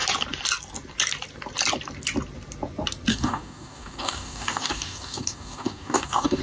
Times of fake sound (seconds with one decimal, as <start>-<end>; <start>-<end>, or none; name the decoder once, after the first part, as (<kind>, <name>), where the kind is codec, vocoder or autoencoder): 3.1-6.4 (codec, DAC)